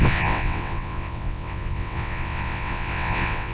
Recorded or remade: remade